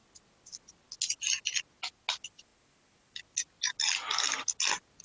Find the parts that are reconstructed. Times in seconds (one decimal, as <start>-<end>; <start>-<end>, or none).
none